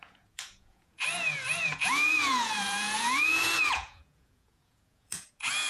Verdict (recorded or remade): remade